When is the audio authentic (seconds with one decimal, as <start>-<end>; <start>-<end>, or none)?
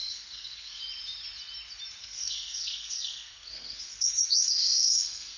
0.8-2.0